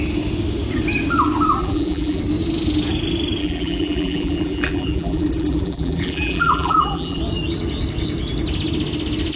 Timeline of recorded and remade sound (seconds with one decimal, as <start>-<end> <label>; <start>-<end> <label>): 0.0-1.6 recorded; 1.6-2.2 remade; 2.2-3.4 recorded; 3.4-7.2 remade; 7.2-9.4 recorded